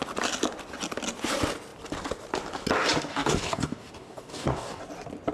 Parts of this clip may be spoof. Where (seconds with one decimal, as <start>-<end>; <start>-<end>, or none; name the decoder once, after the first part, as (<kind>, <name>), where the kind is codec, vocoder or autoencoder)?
3.1-4.8 (codec, DAC)